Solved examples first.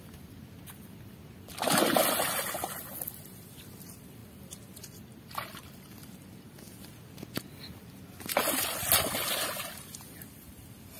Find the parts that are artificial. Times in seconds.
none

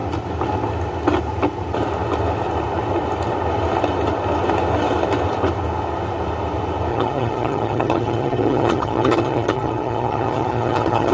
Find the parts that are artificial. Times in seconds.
6.9-11.1 (vocoder, HiFi-GAN)

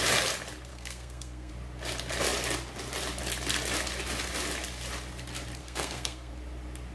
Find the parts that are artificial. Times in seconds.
0.7-1.5 (codec, SNAC); 5.6-6.3

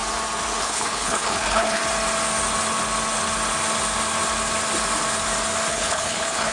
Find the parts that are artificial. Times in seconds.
0.6-1.8 (codec, HILCodec); 5.7-6.5

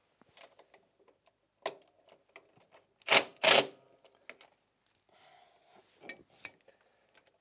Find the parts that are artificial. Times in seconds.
none

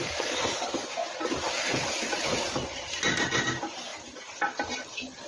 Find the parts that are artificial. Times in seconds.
0.0-1.0 (vocoder, BigVGAN v2); 2.1-3.9

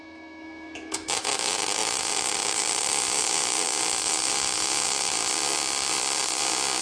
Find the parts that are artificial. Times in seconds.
0.0-5.1 (autoencoder, DAC-VAE)